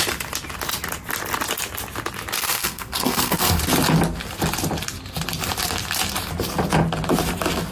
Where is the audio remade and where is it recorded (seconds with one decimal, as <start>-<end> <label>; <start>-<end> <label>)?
0.0-2.4 recorded; 2.4-3.6 remade; 3.6-7.7 recorded